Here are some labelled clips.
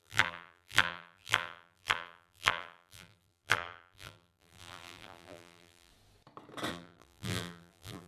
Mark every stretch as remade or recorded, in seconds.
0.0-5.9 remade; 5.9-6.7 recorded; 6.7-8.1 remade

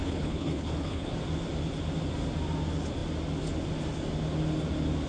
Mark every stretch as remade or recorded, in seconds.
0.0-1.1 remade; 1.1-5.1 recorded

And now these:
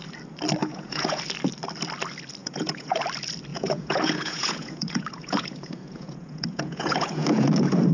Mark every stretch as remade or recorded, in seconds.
0.0-0.6 recorded; 0.6-1.2 remade; 1.2-2.4 recorded; 2.4-3.0 remade; 3.0-3.5 recorded; 3.5-7.5 remade; 7.5-7.9 recorded